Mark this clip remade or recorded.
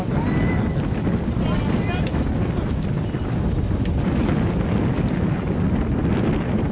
recorded